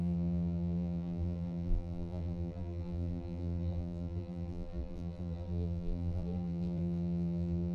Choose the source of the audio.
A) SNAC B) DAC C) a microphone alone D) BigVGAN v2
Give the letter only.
D